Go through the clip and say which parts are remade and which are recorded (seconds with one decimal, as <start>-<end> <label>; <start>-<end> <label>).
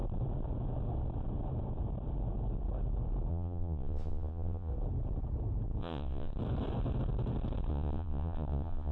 0.0-3.3 recorded; 3.3-4.7 remade; 4.7-5.8 recorded; 5.8-6.3 remade; 6.3-7.7 recorded; 7.7-8.9 remade